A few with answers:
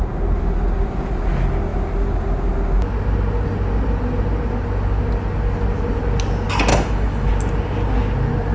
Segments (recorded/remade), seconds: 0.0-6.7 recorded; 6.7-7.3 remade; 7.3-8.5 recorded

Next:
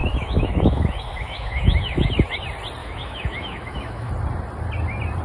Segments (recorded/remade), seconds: 0.0-2.1 remade; 2.1-2.8 recorded; 2.8-4.1 remade; 4.1-5.2 recorded

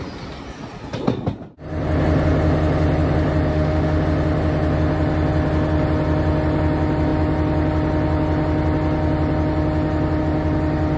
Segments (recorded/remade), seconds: 0.0-3.5 recorded; 3.5-4.0 remade; 4.0-11.0 recorded

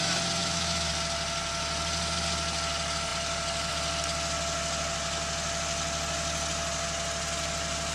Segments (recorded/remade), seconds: 0.0-0.4 recorded; 0.4-0.9 remade; 0.9-7.9 recorded

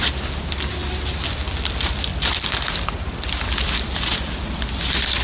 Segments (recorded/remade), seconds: 0.0-5.2 recorded

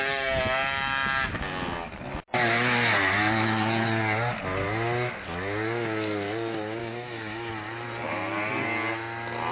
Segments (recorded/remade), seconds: 0.0-6.8 recorded; 6.8-7.5 remade; 7.5-9.5 recorded

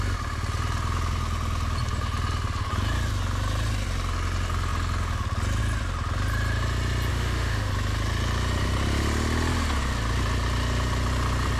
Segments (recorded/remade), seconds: 0.0-7.1 recorded; 7.1-7.7 remade; 7.7-11.6 recorded